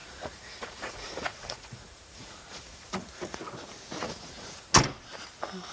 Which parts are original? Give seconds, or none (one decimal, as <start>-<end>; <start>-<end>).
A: 3.4-4.0; 4.7-5.7